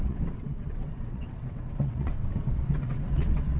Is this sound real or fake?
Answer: fake